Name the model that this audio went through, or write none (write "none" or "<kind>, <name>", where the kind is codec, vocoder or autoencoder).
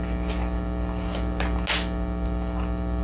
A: none